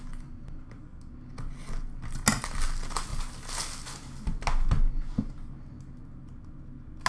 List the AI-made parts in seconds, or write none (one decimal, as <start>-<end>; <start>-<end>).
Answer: none